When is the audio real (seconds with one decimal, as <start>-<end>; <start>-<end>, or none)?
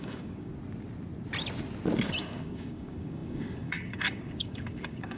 0.5-2.2